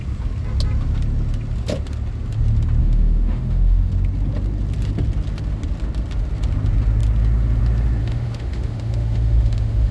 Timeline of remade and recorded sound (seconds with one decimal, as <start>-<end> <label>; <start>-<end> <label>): 0.0-2.8 recorded; 2.8-3.9 remade; 3.9-8.0 recorded; 8.0-9.9 remade